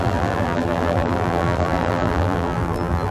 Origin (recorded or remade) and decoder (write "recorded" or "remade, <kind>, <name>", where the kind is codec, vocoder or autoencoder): remade, vocoder, BigVGAN v2